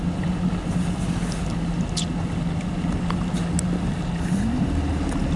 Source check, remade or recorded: recorded